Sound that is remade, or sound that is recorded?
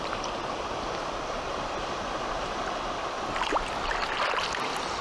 recorded